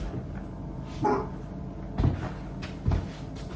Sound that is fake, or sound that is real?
real